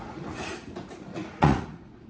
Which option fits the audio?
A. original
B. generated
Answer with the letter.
B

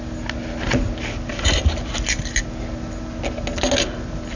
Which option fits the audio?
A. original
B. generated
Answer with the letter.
A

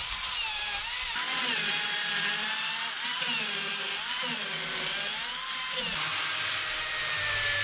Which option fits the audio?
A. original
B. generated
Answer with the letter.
A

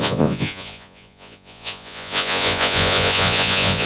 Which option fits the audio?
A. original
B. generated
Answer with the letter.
B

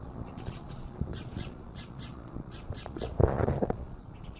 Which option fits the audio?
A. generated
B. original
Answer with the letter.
A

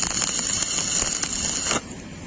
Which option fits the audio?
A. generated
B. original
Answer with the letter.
B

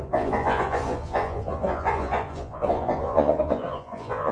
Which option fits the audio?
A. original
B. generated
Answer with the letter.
B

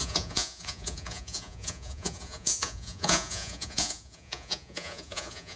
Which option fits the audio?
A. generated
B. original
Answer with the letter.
A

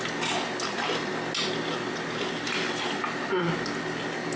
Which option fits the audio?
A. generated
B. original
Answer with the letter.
B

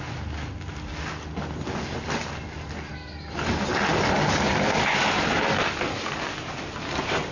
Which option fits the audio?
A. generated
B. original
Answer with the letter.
B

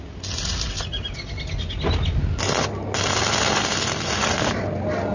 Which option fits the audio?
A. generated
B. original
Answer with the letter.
B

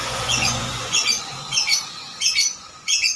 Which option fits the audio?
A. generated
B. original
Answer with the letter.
A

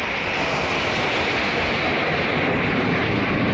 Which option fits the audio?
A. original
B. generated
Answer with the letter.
A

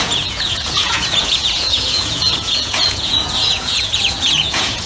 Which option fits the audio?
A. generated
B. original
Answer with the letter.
A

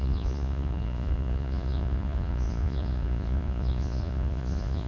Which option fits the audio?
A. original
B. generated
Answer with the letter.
B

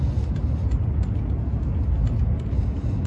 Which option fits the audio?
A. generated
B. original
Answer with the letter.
B